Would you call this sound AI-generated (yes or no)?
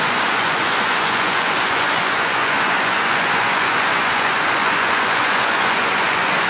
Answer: yes